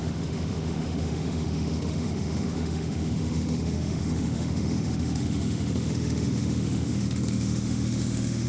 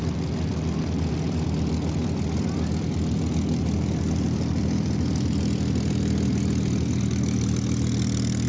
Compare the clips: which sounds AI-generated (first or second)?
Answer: first